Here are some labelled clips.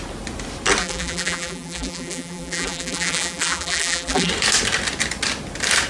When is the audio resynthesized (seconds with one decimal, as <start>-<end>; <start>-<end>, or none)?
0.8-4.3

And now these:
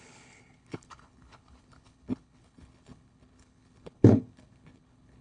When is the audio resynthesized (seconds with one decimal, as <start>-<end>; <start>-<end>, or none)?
0.0-5.2

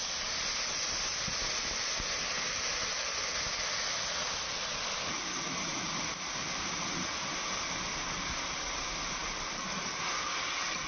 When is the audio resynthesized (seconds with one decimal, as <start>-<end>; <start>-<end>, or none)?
5.7-7.2

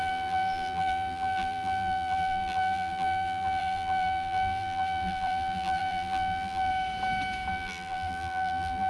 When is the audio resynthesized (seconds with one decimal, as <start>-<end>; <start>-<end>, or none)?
0.0-6.7; 7.5-8.9